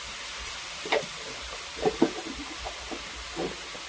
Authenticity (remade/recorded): remade